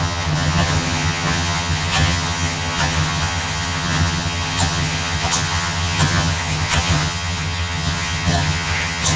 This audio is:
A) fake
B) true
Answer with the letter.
A